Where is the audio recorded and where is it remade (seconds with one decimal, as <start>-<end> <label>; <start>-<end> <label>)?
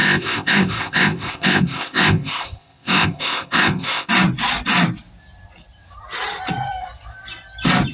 0.0-4.1 remade; 4.1-7.9 recorded